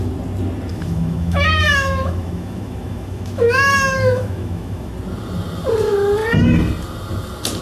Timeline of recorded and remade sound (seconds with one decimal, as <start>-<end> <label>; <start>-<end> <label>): 0.0-0.7 recorded; 0.7-4.9 remade; 4.9-7.6 recorded

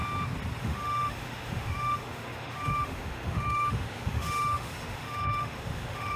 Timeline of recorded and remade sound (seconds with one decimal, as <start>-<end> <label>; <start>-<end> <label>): 0.0-0.6 recorded; 0.6-6.2 remade

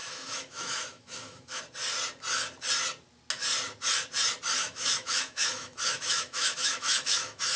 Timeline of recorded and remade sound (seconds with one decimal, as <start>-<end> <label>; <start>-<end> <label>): 0.0-1.6 remade; 1.6-4.6 recorded; 4.6-7.6 remade

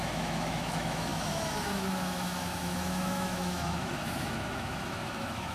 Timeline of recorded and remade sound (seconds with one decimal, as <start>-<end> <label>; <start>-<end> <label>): 0.0-5.5 remade